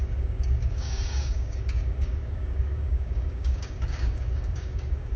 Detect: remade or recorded remade